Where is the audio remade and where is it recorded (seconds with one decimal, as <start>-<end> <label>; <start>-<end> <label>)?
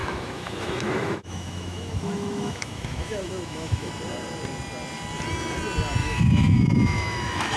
0.0-3.9 remade; 3.9-6.0 recorded; 6.0-7.6 remade